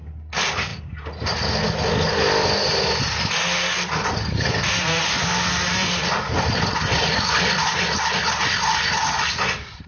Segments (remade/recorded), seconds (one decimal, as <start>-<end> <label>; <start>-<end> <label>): 0.0-9.9 recorded